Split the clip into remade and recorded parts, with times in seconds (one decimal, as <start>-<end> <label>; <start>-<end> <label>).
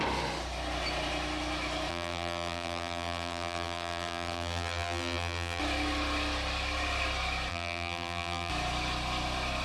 0.0-1.9 recorded; 1.9-5.6 remade; 5.6-7.5 recorded; 7.5-8.5 remade; 8.5-9.6 recorded